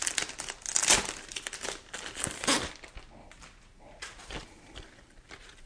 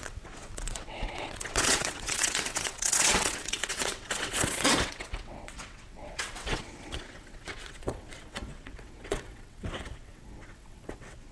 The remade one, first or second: second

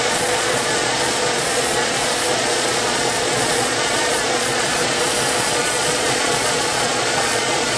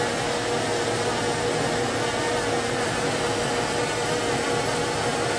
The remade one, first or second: first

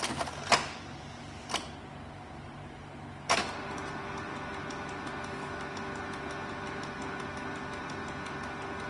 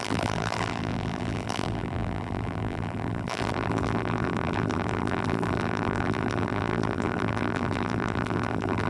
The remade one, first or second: second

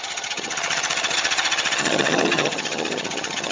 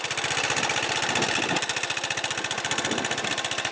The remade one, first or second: first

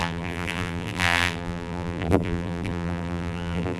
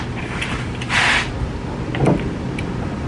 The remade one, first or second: first